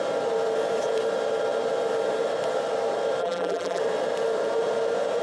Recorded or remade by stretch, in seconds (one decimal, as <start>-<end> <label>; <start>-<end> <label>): 0.0-3.2 recorded; 3.2-3.8 remade; 3.8-5.2 recorded